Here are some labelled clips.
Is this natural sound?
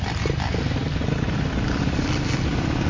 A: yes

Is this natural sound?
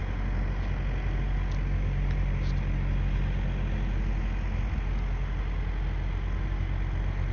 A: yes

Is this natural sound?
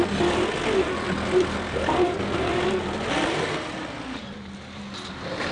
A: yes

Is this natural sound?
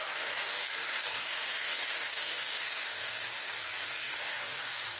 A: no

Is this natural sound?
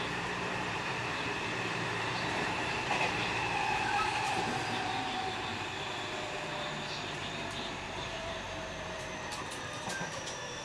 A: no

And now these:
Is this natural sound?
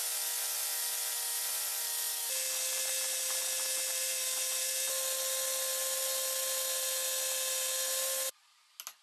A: yes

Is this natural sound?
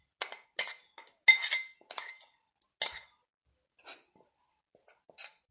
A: yes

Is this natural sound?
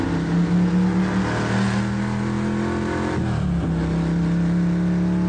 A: yes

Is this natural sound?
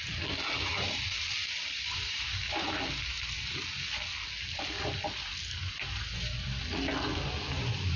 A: yes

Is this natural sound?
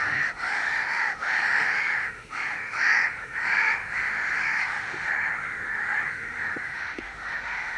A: no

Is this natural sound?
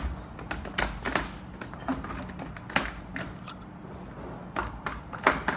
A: yes